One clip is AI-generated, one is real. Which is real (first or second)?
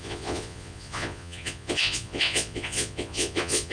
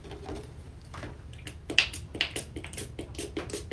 second